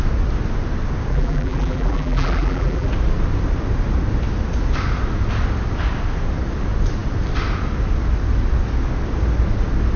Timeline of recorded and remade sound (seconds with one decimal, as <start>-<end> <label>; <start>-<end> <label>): 0.0-1.1 recorded; 1.1-2.9 remade; 2.9-10.0 recorded